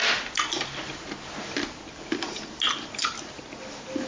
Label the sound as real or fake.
real